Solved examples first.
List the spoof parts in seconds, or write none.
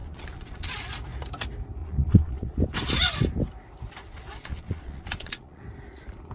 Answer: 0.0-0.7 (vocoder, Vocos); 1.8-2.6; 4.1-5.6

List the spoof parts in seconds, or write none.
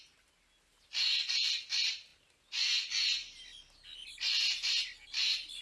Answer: none